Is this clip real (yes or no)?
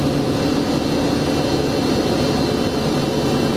yes